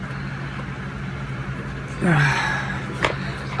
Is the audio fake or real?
real